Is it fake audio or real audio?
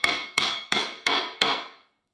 fake